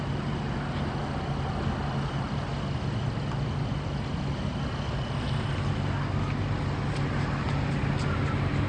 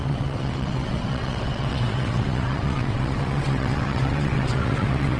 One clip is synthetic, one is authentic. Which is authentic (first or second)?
first